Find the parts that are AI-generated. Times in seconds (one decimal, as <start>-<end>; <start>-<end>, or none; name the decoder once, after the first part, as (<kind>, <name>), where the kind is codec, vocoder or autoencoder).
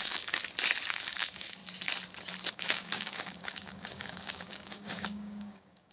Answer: 0.0-0.4 (codec, DAC); 0.9-1.6; 2.5-5.9